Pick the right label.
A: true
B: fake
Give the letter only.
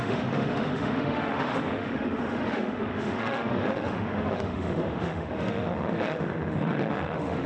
B